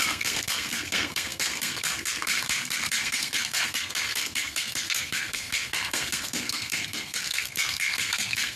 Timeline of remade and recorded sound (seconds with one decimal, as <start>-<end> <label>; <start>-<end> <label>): 0.0-8.6 remade